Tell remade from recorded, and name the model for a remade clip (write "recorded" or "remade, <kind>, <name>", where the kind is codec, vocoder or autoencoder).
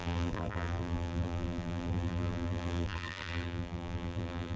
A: remade, vocoder, BigVGAN v2